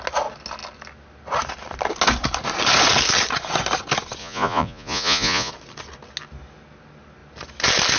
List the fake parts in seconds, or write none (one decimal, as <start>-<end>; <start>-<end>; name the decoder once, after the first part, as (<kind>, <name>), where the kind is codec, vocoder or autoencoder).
4.2-5.5 (vocoder, Vocos)